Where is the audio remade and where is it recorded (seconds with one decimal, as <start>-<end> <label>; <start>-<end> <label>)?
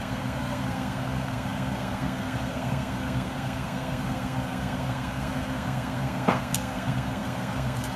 0.0-8.0 remade